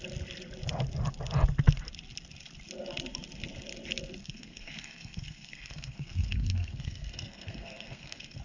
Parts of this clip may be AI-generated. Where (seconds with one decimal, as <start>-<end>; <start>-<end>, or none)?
4.2-8.4